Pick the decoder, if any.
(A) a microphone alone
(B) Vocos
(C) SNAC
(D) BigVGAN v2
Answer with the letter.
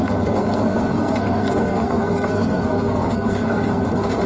C